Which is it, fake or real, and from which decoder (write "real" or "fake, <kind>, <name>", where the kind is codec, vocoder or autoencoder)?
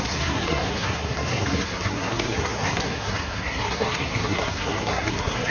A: fake, codec, SNAC